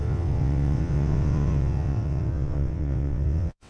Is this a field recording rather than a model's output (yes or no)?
no